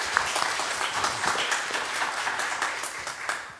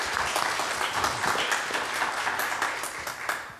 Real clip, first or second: second